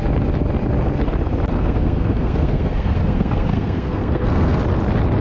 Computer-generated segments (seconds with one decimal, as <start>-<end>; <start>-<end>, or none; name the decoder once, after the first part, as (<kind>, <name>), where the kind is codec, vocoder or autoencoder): 1.5-4.6 (codec, SNAC)